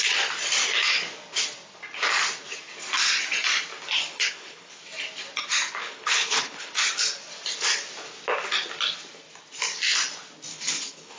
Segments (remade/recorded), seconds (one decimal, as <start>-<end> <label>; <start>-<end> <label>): 0.0-4.1 recorded; 4.1-4.8 remade; 4.8-5.8 recorded; 5.8-6.7 remade; 6.7-10.5 recorded; 10.5-11.2 remade